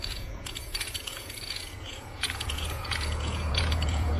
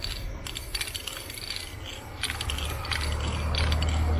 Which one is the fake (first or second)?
first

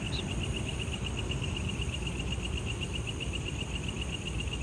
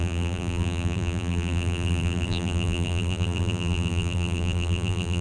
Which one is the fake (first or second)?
second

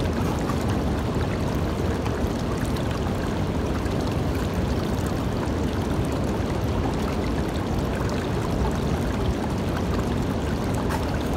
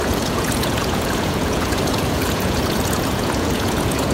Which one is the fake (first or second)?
second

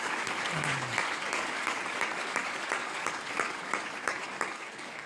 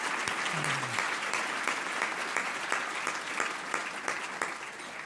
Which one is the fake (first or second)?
first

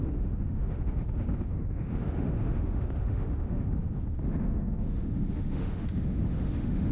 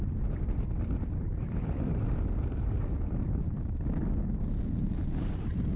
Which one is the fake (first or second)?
first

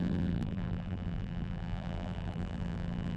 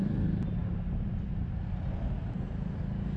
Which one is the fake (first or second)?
first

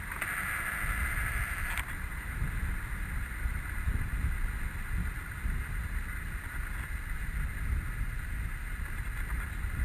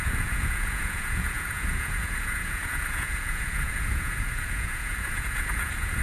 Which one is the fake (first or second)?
second